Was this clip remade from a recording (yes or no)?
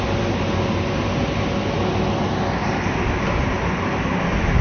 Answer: no